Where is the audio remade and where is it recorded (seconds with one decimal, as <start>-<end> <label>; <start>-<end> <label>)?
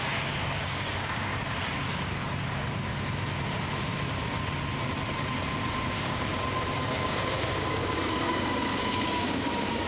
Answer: 0.0-1.3 remade; 1.3-5.7 recorded; 5.7-6.3 remade; 6.3-6.9 recorded; 6.9-9.9 remade